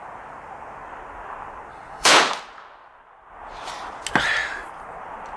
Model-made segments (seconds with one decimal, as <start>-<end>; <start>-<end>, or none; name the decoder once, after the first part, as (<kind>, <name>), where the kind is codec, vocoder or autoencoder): 1.7-2.2 (codec, HILCodec)